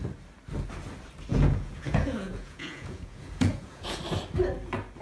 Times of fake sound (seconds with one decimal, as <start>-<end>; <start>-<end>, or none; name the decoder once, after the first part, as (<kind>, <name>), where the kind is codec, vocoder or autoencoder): 1.3-4.0 (vocoder, Vocos)